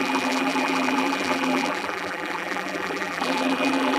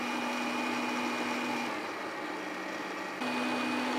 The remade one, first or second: first